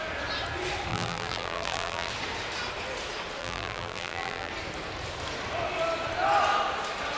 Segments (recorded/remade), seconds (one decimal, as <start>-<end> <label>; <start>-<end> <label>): 0.0-0.9 recorded; 0.9-2.1 remade; 2.1-3.4 recorded; 3.4-4.5 remade; 4.5-7.2 recorded